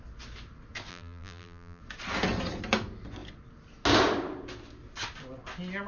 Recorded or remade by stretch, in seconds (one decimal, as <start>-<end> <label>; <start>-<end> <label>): 0.0-0.9 recorded; 0.9-1.8 remade; 1.8-5.9 recorded